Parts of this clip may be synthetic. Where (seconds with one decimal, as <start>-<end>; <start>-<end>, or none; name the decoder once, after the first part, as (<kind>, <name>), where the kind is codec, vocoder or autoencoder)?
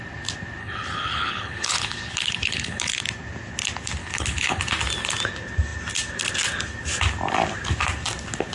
0.6-3.0 (codec, HILCodec); 4.0-4.6